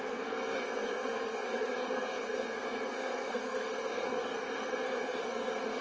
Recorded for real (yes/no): no